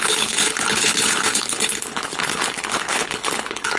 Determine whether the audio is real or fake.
fake